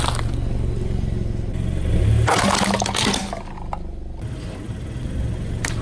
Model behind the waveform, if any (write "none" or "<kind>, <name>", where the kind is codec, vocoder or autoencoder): none